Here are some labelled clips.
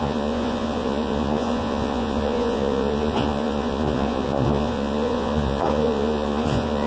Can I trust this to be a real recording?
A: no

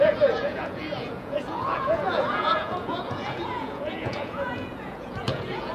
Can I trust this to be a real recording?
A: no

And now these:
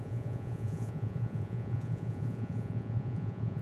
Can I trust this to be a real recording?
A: no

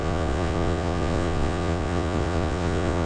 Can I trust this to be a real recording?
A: no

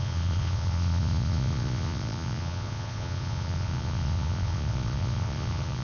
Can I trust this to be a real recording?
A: no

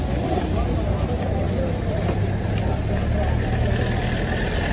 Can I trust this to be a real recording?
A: yes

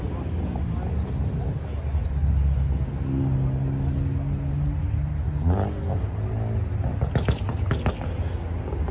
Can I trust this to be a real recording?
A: yes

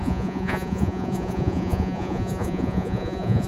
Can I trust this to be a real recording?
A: no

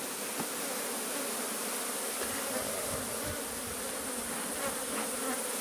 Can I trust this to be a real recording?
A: yes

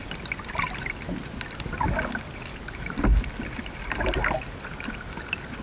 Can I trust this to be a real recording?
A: yes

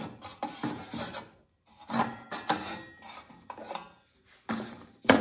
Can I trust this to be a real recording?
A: yes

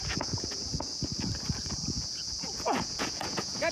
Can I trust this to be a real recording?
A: no